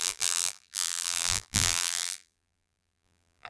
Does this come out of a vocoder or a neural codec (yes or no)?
yes